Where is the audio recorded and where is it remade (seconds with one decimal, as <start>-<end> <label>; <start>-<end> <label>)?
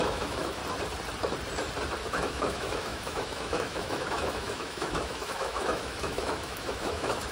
0.0-0.6 remade; 0.6-2.1 recorded; 2.1-7.3 remade